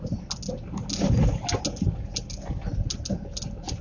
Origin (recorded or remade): recorded